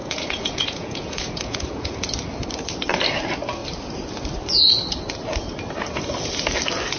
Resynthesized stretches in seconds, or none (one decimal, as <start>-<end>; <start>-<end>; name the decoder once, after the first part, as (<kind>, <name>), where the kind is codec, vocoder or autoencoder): 0.0-2.1 (vocoder, Vocos)